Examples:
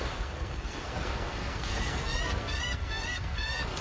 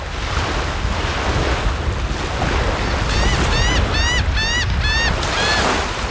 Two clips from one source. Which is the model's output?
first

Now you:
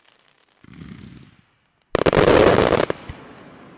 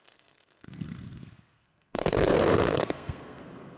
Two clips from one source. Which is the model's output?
second